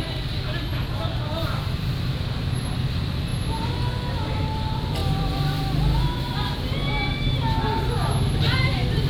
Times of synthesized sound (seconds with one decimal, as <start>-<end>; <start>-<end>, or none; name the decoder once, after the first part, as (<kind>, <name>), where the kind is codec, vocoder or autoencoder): none